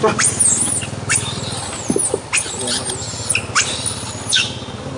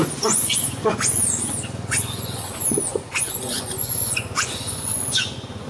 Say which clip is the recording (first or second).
first